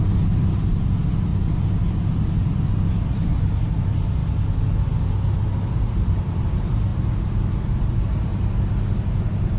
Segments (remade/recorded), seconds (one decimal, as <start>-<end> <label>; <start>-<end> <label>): 0.0-4.2 remade; 4.2-5.5 recorded; 5.5-6.9 remade; 6.9-7.8 recorded; 7.8-8.3 remade; 8.3-9.2 recorded; 9.2-9.6 remade